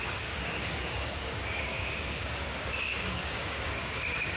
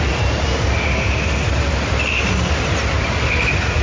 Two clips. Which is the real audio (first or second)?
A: second